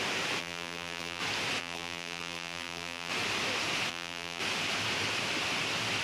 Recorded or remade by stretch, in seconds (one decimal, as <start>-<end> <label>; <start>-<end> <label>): 0.0-0.4 recorded; 0.4-1.2 remade; 1.2-1.6 recorded; 1.6-3.1 remade; 3.1-3.9 recorded; 3.9-4.4 remade; 4.4-6.0 recorded

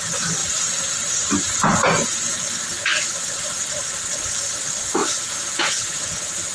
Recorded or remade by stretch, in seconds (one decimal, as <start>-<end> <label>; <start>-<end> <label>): 0.0-5.0 recorded; 5.0-6.5 remade

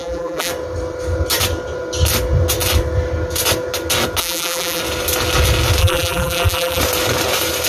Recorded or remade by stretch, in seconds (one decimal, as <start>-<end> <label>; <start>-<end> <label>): 0.0-0.5 remade; 0.5-4.2 recorded; 4.2-4.8 remade; 4.8-5.8 recorded; 5.8-6.8 remade; 6.8-7.7 recorded

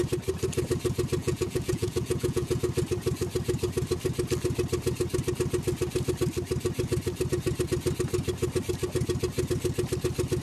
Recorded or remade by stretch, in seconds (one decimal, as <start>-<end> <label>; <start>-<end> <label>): 0.0-1.2 recorded; 1.2-2.6 remade; 2.6-10.4 recorded

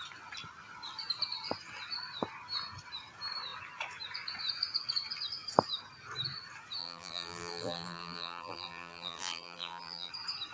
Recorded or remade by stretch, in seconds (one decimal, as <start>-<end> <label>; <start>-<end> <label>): 0.0-6.8 recorded; 6.8-10.1 remade; 10.1-10.5 recorded

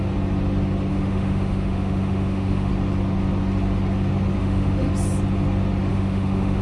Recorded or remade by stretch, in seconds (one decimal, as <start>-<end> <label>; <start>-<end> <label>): 0.0-0.9 recorded; 0.9-2.7 remade; 2.7-4.4 recorded; 4.4-4.9 remade; 4.9-5.9 recorded; 5.9-6.6 remade